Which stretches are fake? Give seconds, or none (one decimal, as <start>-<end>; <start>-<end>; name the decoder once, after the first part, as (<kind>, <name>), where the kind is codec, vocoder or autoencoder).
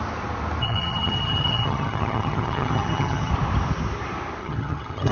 0.6-3.3 (vocoder, HiFi-GAN); 4.4-5.1